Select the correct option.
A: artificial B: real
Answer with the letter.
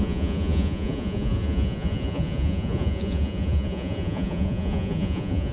A